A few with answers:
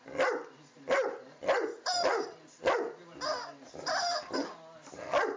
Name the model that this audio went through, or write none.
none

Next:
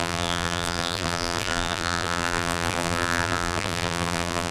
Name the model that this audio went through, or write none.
vocoder, BigVGAN v2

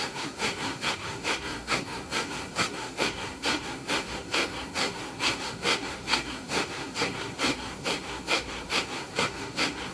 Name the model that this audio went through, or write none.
codec, SNAC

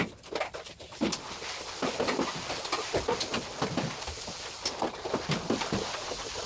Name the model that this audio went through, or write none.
none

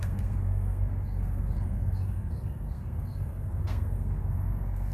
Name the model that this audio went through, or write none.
codec, SNAC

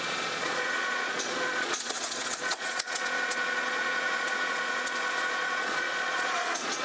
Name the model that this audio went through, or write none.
vocoder, Vocos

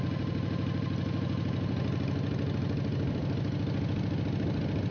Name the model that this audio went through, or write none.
none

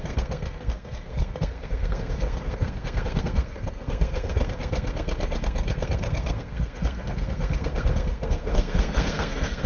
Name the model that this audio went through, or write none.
codec, SNAC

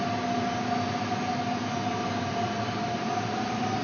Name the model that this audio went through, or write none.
none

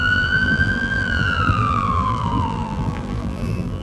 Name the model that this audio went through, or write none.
vocoder, BigVGAN v2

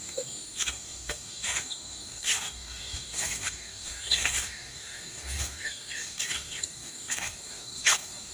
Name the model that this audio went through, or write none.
codec, DAC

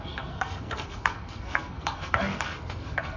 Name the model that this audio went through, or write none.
codec, SNAC